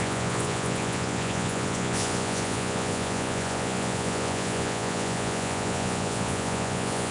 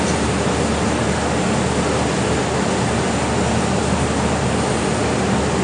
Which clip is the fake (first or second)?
first